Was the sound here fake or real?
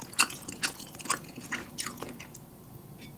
fake